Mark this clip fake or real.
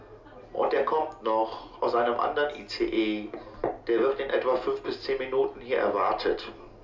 real